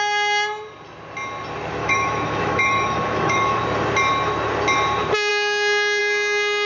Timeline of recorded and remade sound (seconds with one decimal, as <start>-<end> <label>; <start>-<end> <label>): 0.0-1.8 recorded; 1.8-3.6 remade; 3.6-6.7 recorded